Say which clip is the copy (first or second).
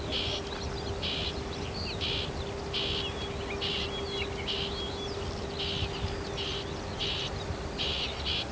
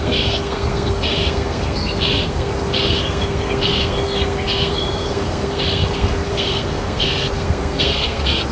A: second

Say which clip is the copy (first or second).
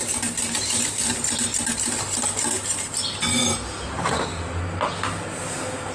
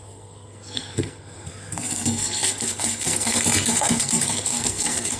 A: second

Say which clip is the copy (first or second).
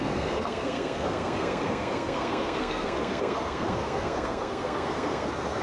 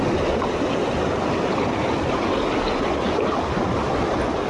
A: first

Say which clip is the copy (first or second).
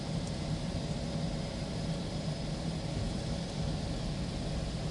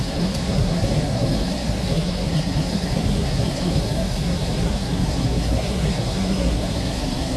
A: second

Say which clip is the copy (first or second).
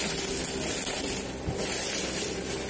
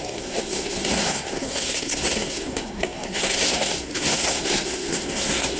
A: second